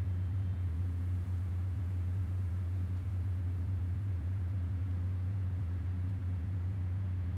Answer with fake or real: fake